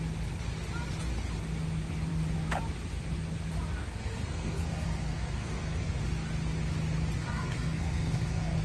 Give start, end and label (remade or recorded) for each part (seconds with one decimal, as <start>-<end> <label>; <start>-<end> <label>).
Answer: 0.0-3.8 recorded; 3.8-6.0 remade; 6.0-7.2 recorded; 7.2-8.6 remade